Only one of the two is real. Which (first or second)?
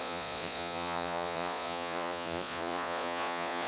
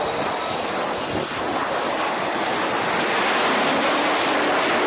second